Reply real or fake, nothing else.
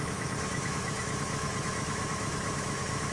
fake